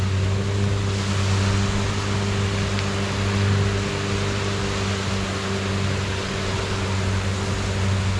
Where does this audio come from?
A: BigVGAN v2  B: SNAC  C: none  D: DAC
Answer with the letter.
C